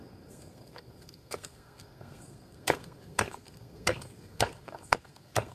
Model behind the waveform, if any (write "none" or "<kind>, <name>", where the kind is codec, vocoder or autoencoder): codec, SNAC